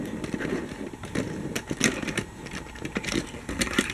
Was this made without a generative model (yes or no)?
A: yes